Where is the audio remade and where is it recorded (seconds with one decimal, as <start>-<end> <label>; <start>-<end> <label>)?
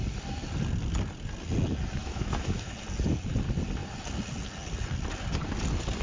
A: 0.0-2.0 recorded; 2.0-2.7 remade; 2.7-6.0 recorded